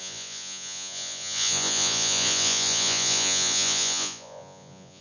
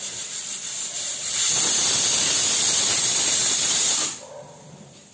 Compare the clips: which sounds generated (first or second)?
first